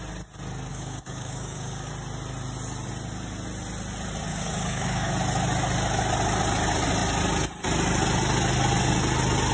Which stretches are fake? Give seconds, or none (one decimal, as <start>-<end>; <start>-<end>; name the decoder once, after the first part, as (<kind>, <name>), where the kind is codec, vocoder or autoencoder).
0.7-1.9 (codec, DAC); 4.3-5.1